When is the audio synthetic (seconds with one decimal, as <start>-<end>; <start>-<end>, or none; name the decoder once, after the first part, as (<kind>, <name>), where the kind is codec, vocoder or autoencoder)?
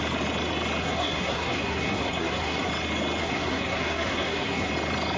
0.8-2.7 (codec, SNAC); 3.2-4.7